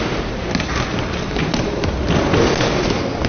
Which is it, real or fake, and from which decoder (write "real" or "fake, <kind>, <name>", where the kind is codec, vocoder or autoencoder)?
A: real